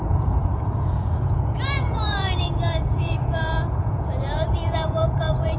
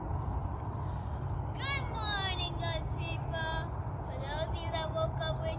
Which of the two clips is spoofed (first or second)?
first